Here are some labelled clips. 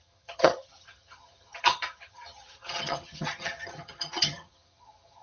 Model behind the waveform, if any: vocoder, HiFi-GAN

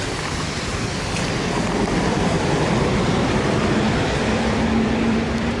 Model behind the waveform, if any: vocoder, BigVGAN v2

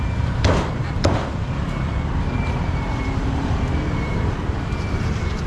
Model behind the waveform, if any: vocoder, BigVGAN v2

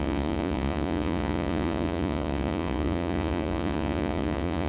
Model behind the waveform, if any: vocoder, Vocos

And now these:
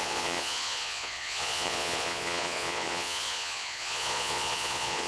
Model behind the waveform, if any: vocoder, Vocos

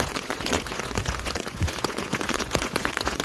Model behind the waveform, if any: vocoder, Vocos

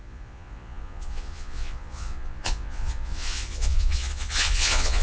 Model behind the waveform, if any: vocoder, Vocos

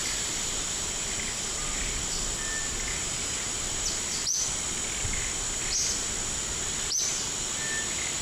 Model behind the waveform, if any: none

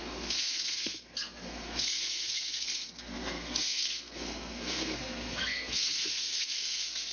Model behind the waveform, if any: codec, SNAC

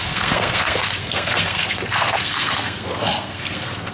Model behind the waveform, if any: codec, SNAC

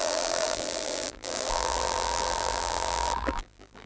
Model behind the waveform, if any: vocoder, BigVGAN v2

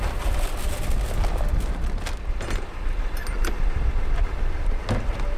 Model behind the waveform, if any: none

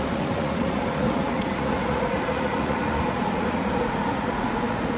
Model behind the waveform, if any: vocoder, Vocos